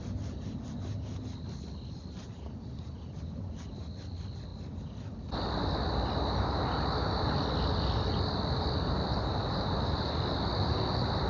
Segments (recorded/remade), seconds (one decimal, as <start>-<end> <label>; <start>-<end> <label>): 0.0-11.3 recorded